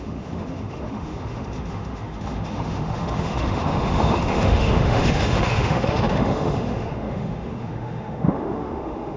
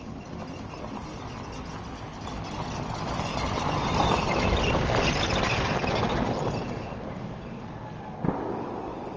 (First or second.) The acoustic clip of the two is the second